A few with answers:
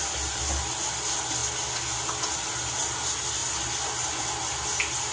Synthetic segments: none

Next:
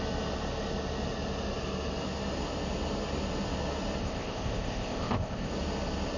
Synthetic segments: 4.0-5.5 (codec, ZipCodec)